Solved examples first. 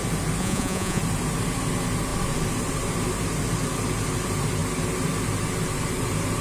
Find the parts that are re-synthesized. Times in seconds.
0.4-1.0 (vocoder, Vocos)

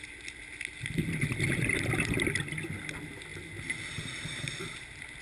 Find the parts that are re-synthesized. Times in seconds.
none

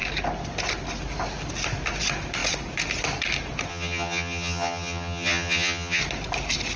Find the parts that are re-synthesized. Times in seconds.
3.7-6.0 (vocoder, HiFi-GAN)

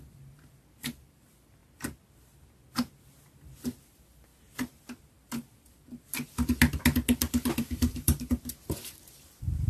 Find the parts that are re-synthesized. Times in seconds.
0.0-1.6 (vocoder, BigVGAN v2); 3.8-4.3; 5.0-6.1; 7.6-9.7

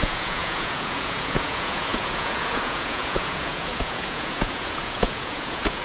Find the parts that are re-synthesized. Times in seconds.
0.0-5.8 (vocoder, Vocos)

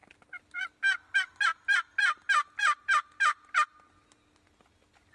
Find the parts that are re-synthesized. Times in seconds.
none

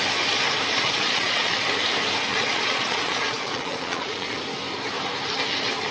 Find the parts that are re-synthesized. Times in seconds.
0.7-1.6 (vocoder, Vocos); 2.3-4.4

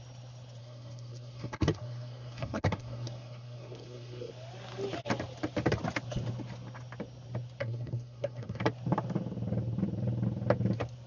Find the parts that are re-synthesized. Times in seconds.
0.6-4.3 (codec, SNAC); 7.6-8.6